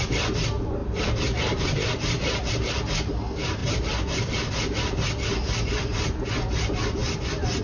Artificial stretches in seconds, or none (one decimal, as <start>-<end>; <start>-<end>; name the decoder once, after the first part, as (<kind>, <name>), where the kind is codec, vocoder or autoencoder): 0.8-2.5 (vocoder, BigVGAN v2); 3.6-4.5